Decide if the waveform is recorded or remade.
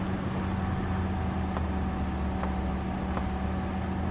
recorded